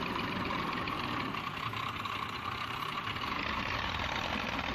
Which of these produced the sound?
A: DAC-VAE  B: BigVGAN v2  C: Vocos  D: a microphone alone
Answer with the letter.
D